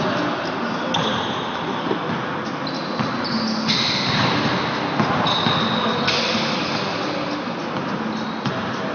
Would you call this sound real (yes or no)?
yes